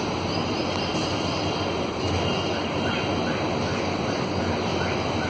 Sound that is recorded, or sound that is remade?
recorded